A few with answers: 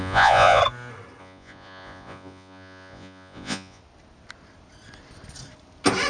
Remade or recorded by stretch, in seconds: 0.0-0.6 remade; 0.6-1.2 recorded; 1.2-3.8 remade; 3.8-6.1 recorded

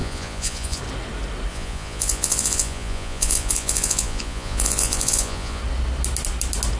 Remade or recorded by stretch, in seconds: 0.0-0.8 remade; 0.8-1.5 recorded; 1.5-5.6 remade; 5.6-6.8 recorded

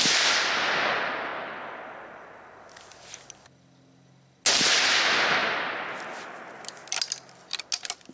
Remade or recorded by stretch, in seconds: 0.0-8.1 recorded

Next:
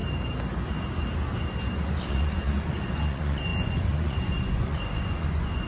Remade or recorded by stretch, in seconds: 0.0-2.0 recorded; 2.0-5.7 remade

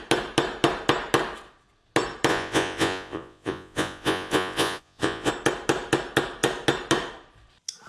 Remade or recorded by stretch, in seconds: 0.0-2.3 recorded; 2.3-5.3 remade; 5.3-7.9 recorded